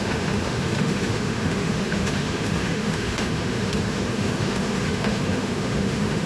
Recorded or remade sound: remade